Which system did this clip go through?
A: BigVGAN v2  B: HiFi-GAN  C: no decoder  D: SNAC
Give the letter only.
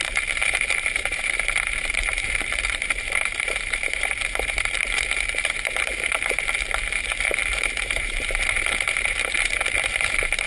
A